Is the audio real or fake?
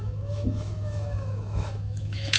fake